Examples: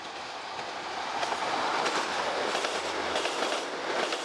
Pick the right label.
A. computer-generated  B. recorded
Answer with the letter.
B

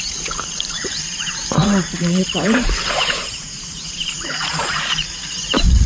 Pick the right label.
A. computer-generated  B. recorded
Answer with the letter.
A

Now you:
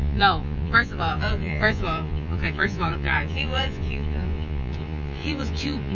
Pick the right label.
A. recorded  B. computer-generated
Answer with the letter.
B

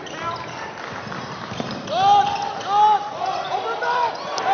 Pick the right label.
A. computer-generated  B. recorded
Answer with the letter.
B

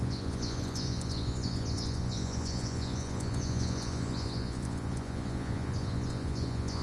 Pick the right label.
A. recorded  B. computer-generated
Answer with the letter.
B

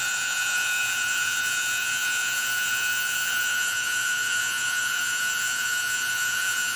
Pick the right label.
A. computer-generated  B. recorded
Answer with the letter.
A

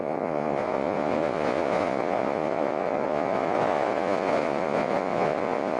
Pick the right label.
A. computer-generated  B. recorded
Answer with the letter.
A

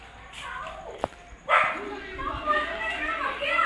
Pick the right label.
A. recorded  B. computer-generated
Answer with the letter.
A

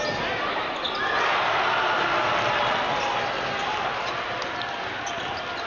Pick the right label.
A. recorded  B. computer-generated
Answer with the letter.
A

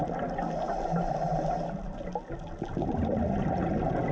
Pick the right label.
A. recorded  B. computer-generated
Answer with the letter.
A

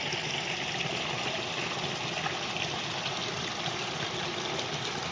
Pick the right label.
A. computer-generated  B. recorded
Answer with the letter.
B